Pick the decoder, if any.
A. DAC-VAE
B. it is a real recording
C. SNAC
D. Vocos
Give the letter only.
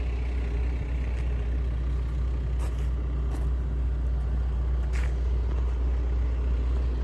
B